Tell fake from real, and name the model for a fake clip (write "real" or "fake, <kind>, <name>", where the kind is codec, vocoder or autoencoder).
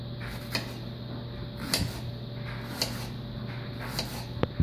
real